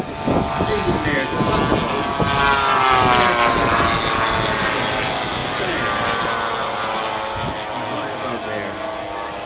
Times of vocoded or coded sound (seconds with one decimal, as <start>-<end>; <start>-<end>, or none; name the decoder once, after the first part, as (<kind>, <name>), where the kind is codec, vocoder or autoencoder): none